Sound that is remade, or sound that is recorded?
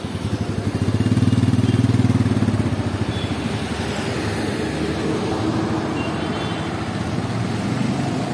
recorded